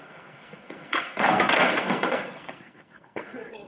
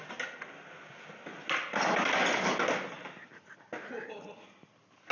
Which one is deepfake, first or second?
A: first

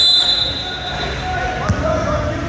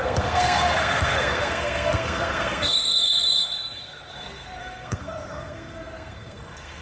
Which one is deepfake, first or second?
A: second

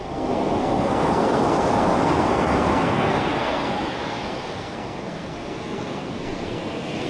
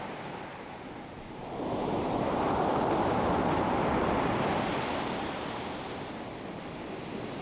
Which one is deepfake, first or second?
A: first